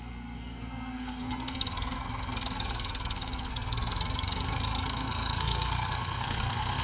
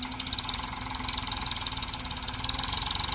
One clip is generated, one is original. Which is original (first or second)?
second